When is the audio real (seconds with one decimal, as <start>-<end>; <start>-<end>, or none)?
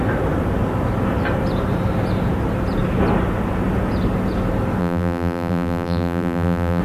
0.0-4.8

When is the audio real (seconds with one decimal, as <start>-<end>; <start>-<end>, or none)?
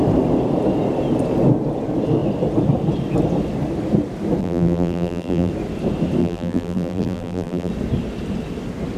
0.0-4.4; 5.5-6.2; 7.7-9.0